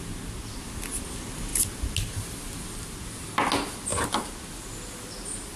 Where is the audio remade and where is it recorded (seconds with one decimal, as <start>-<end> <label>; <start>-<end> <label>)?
0.0-5.6 recorded